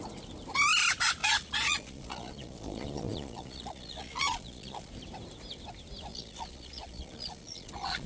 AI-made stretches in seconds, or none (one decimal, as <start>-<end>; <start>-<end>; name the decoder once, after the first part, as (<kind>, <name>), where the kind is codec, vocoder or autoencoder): 1.2-4.9 (vocoder, Vocos); 6.1-8.1